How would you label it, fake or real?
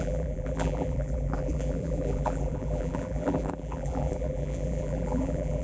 fake